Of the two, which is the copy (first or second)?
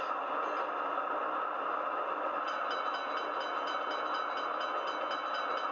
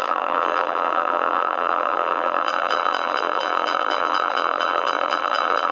second